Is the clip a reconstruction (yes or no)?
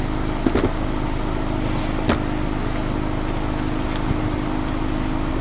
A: no